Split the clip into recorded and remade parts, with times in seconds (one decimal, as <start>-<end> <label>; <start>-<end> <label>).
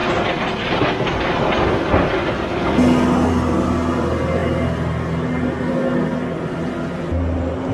0.0-7.7 recorded